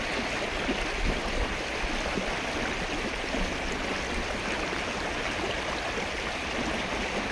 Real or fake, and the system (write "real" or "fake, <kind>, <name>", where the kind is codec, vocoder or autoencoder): real